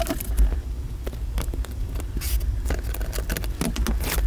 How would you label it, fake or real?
real